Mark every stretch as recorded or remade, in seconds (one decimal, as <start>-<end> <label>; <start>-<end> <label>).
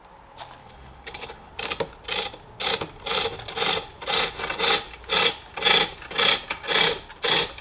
0.0-0.6 recorded; 0.6-1.5 remade; 1.5-7.6 recorded